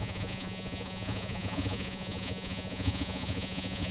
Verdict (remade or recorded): remade